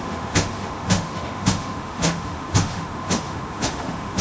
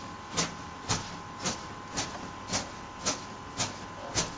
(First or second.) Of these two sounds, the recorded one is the second